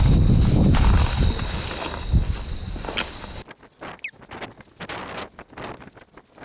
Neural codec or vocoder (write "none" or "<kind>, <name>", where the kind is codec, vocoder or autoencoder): none